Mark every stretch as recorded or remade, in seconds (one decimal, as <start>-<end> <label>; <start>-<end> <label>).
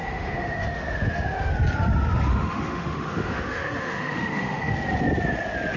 0.0-1.5 remade; 1.5-2.3 recorded; 2.3-4.7 remade; 4.7-5.8 recorded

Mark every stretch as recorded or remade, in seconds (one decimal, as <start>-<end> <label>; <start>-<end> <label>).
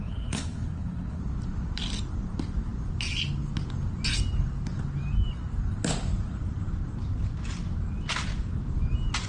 0.0-1.2 remade; 1.2-9.3 recorded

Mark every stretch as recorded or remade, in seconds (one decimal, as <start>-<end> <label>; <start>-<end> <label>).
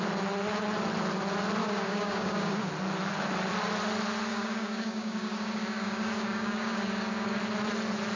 0.0-1.6 recorded; 1.6-2.7 remade; 2.7-4.3 recorded; 4.3-7.4 remade; 7.4-8.2 recorded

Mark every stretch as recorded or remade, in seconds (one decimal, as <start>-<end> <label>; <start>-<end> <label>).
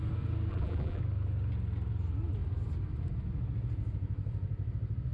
0.0-0.5 recorded; 0.5-1.0 remade; 1.0-5.1 recorded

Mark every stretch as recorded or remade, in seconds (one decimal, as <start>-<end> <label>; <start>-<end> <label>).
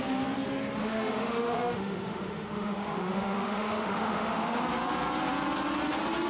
0.0-0.8 recorded; 0.8-4.6 remade; 4.6-6.3 recorded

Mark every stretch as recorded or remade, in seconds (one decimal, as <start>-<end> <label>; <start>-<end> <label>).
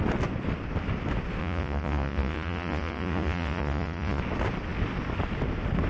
0.0-1.4 recorded; 1.4-4.2 remade; 4.2-5.9 recorded